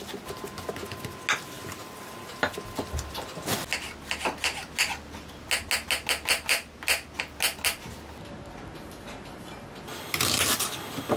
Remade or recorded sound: recorded